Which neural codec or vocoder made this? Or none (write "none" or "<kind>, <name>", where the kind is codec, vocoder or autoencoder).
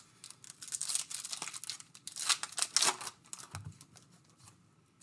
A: none